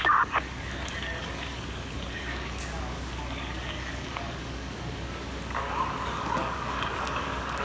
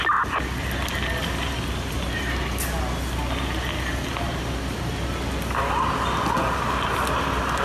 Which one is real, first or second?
second